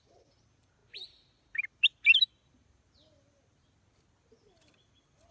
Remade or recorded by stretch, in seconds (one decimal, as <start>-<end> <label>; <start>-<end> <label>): 0.0-5.3 recorded